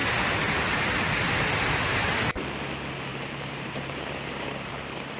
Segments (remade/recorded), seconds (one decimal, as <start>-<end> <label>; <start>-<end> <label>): 0.0-3.1 recorded; 3.1-4.7 remade; 4.7-5.2 recorded